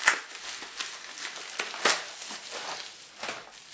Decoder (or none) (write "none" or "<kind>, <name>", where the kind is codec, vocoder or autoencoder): none